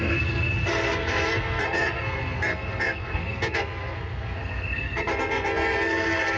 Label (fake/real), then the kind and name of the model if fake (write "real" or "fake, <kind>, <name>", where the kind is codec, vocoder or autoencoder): fake, codec, SNAC